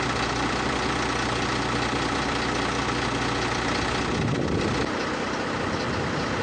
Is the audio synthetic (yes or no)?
no